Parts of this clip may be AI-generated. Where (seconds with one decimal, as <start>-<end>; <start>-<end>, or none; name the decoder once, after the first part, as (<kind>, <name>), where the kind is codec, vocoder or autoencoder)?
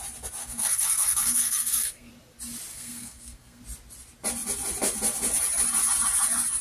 0.4-2.1 (codec, SNAC); 2.7-3.6